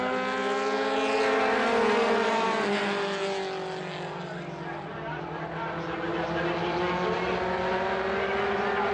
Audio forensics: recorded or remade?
recorded